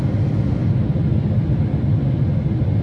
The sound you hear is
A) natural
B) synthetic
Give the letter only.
A